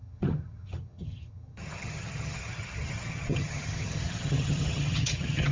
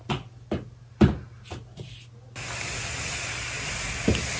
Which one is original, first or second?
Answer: second